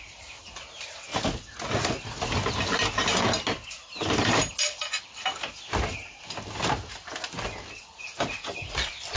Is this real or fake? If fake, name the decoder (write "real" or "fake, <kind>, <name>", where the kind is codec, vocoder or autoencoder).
real